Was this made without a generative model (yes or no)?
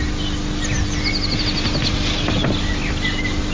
yes